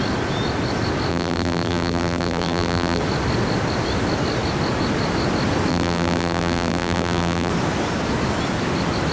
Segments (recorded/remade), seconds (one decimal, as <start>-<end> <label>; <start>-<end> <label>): 0.0-1.1 recorded; 1.1-3.0 remade; 3.0-5.7 recorded; 5.7-7.5 remade; 7.5-9.1 recorded